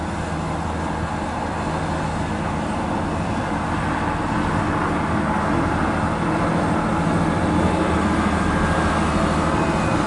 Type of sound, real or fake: real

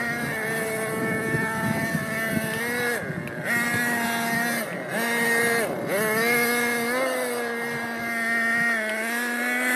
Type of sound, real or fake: real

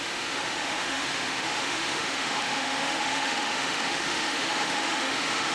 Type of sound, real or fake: fake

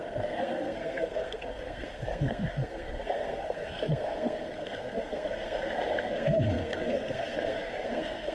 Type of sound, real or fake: fake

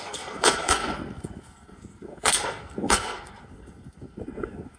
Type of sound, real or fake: fake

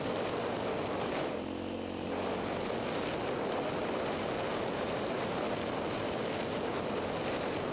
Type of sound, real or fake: real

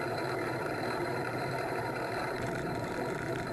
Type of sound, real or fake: fake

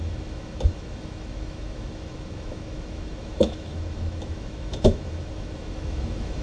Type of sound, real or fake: fake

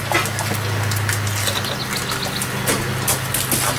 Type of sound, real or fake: real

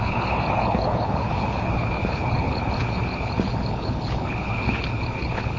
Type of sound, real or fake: fake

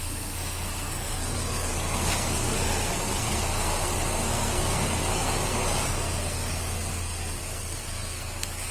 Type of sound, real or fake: fake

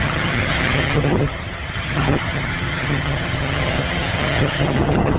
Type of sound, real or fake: fake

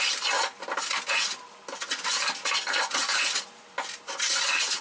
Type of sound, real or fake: real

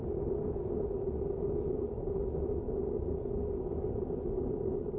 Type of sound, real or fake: real